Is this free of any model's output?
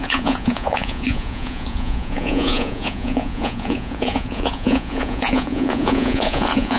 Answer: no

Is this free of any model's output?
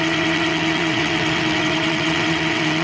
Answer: no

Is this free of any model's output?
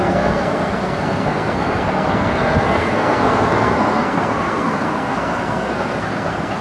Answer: no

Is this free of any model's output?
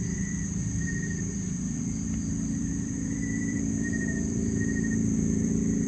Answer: no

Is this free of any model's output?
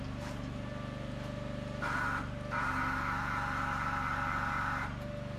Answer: yes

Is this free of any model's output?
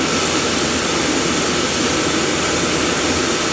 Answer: yes